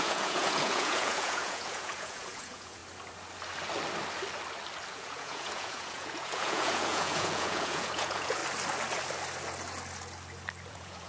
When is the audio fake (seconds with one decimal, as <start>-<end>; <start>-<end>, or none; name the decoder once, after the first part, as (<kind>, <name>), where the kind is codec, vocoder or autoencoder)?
0.0-2.8 (vocoder, Vocos); 4.9-8.4; 10.7-11.1